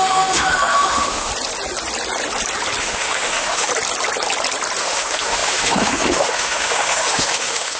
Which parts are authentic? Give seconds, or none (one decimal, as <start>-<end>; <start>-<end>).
1.3-2.8; 3.7-4.8